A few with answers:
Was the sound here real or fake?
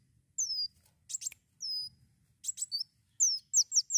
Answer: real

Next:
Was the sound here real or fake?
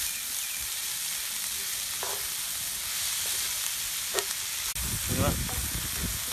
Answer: real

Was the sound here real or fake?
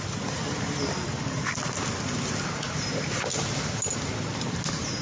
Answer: real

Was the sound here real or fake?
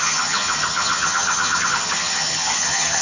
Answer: fake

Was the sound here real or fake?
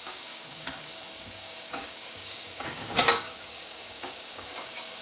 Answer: fake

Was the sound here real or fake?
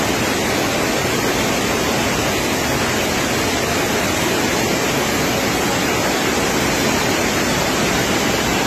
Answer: real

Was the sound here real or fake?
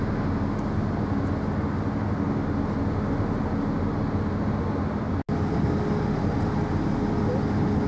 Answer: real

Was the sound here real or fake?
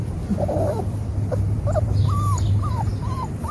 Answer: fake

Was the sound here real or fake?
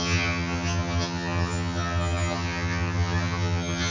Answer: fake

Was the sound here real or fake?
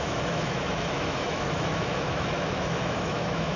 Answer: fake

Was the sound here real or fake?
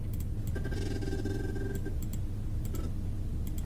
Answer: real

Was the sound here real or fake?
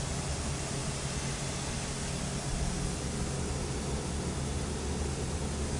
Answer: real